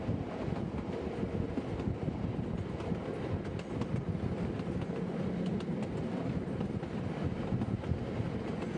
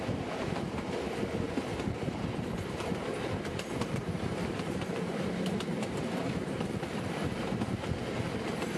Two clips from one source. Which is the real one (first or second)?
first